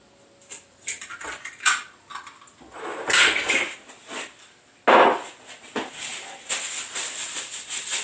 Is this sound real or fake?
real